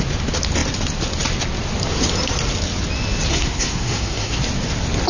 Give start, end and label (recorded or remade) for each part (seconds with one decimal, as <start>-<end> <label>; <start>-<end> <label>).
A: 0.0-3.3 recorded; 3.3-4.4 remade; 4.4-5.1 recorded